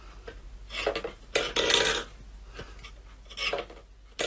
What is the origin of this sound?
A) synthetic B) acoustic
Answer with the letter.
B